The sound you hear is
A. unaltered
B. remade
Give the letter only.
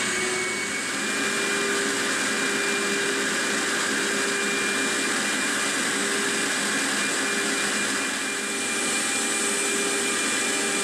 A